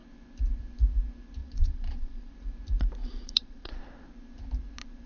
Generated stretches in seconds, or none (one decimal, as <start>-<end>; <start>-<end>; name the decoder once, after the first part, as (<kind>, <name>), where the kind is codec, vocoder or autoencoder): 1.4-2.3 (vocoder, Vocos); 3.0-3.8